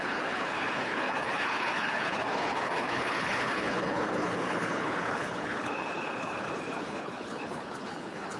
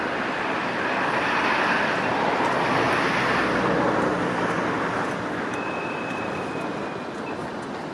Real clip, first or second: second